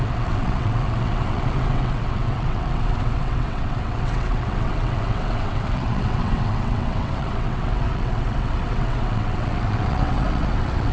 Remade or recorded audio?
remade